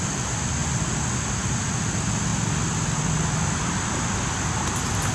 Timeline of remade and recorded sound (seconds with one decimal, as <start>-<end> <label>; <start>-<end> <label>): 0.0-5.1 recorded